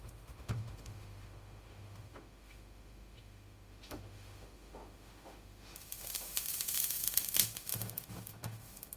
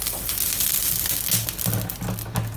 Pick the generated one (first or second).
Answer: first